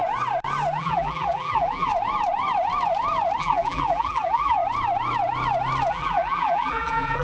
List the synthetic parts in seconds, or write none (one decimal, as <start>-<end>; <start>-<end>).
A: 0.8-1.9; 3.4-4.6; 5.9-7.2